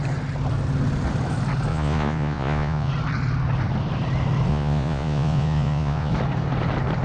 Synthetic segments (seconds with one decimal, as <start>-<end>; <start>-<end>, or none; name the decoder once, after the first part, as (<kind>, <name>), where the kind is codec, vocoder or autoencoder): 1.7-2.9 (vocoder, Vocos); 4.5-6.1